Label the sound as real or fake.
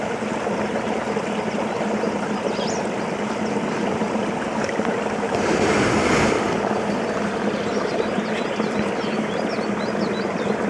real